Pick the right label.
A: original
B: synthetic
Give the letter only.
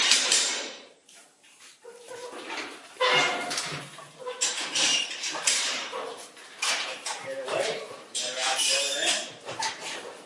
B